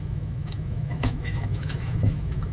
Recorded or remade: remade